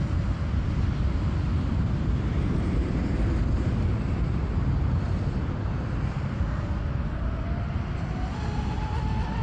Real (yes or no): yes